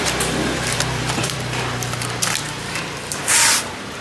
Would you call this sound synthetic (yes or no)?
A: yes